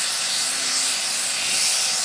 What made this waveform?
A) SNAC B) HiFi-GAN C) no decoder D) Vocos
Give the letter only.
C